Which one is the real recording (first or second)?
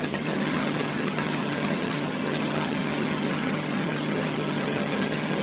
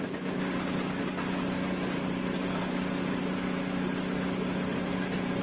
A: second